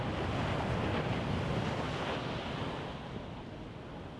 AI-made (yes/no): no